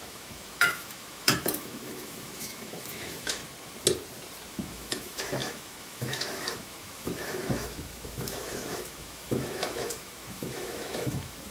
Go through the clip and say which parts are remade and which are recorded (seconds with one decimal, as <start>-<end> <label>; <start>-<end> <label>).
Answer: 0.0-3.4 remade; 3.4-4.5 recorded; 4.5-11.5 remade